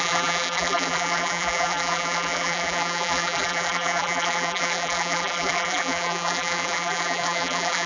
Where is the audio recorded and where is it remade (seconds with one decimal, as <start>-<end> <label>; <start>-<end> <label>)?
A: 0.0-7.9 remade